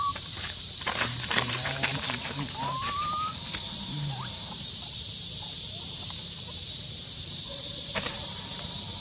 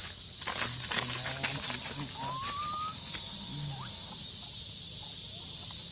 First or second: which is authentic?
second